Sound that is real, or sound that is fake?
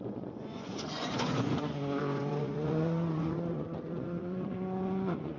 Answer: fake